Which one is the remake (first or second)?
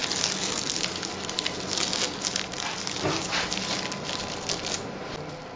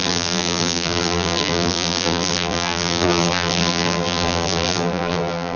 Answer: second